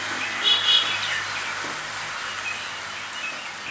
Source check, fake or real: real